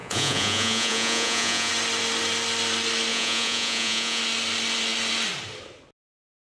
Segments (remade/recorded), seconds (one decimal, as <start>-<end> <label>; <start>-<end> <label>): 0.0-1.7 remade; 1.7-3.1 recorded; 3.1-4.2 remade; 4.2-6.4 recorded